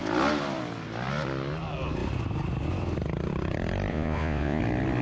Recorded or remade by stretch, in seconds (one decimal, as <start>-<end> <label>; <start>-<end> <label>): 0.0-3.9 recorded; 3.9-4.6 remade; 4.6-5.0 recorded